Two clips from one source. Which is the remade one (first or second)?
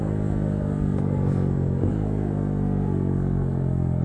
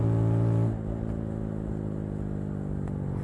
first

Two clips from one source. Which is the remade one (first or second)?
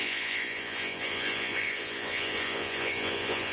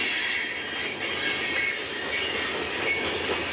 first